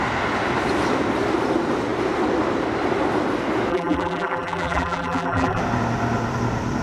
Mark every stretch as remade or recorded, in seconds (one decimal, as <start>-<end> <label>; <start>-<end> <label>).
0.0-3.7 recorded; 3.7-5.6 remade; 5.6-6.8 recorded